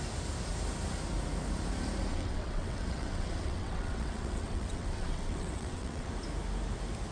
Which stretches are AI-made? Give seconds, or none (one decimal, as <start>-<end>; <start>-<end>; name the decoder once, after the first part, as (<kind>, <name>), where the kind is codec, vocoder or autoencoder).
2.1-6.1 (vocoder, WaveNeXt)